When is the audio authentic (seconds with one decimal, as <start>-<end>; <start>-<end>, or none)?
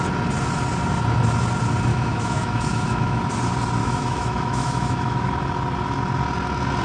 0.0-1.9; 3.2-3.8; 5.3-6.8